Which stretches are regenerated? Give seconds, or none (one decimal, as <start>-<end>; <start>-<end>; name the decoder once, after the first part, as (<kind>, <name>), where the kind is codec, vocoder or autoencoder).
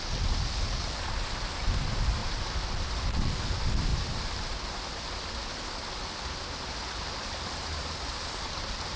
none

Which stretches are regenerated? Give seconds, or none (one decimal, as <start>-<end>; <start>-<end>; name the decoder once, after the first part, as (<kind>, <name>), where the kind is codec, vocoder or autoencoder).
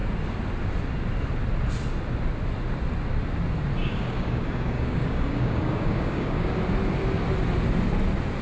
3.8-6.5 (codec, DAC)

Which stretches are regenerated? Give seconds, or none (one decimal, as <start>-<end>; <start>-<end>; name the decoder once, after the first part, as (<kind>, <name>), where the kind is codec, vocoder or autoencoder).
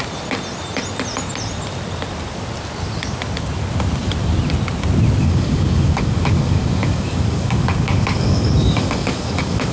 5.2-9.7 (codec, DAC)